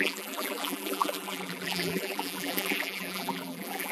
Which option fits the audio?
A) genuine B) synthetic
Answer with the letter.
B